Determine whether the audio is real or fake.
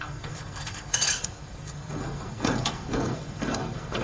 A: fake